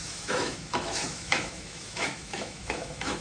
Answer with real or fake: fake